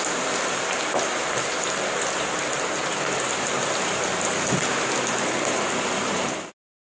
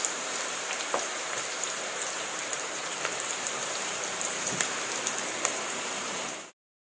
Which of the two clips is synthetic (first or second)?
second